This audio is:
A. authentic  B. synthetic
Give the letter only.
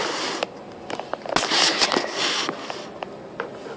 A